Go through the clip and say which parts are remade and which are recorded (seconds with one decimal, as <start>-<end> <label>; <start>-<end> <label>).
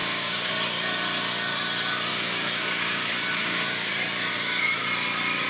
0.0-0.5 remade; 0.5-2.1 recorded; 2.1-3.9 remade; 3.9-4.3 recorded; 4.3-4.8 remade; 4.8-5.5 recorded